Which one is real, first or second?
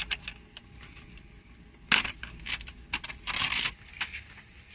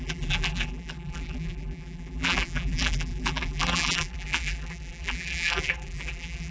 first